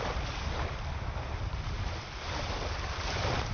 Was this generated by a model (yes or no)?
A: no